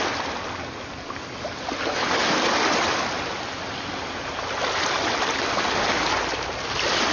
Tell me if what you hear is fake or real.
real